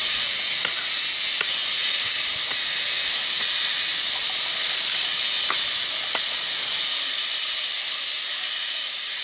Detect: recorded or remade recorded